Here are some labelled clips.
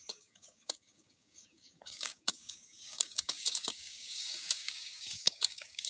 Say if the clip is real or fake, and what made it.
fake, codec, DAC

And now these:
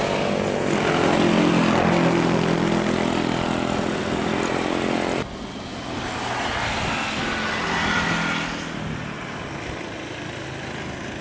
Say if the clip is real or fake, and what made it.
real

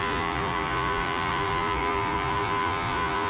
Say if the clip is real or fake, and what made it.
fake, vocoder, BigVGAN v2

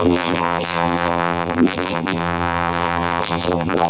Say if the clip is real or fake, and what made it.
fake, vocoder, BigVGAN v2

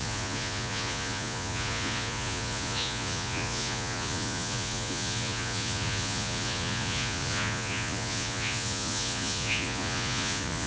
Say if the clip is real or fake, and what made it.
fake, vocoder, Vocos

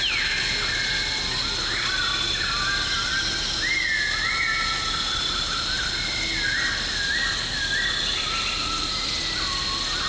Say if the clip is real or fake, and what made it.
real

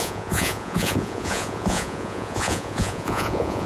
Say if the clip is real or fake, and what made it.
fake, vocoder, Vocos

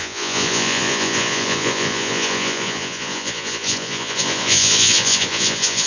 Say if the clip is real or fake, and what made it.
fake, vocoder, Vocos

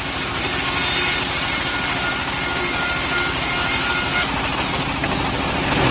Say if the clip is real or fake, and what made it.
real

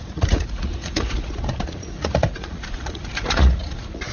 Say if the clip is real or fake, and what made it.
fake, vocoder, Vocos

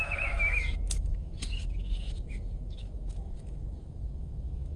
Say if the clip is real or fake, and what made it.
fake, autoencoder, DAC-VAE